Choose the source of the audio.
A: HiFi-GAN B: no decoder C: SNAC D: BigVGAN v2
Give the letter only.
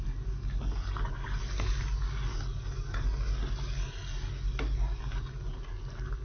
B